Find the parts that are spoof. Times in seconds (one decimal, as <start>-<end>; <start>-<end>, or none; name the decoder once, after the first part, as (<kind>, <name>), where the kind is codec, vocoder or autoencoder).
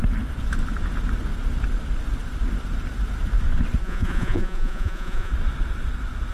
3.8-5.3 (vocoder, Vocos)